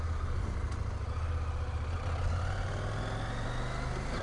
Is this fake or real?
real